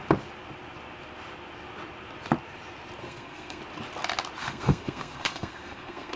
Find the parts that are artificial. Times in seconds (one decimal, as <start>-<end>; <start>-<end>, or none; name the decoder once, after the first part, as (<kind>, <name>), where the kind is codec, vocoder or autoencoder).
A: 3.0-3.6 (codec, SNAC); 4.4-6.2